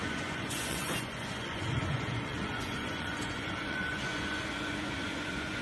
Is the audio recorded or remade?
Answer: remade